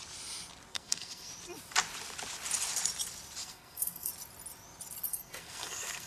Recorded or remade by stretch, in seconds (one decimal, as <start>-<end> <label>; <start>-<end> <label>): 0.0-0.7 recorded; 0.7-1.3 remade; 1.3-3.4 recorded; 3.4-4.1 remade; 4.1-5.1 recorded; 5.1-6.1 remade